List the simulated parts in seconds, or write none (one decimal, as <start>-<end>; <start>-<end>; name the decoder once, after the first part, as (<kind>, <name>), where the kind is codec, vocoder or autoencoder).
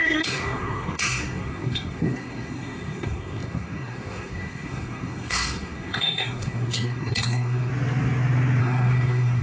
0.0-7.7 (codec, SNAC); 8.6-9.4